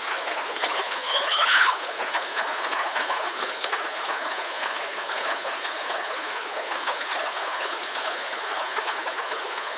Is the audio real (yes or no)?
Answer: no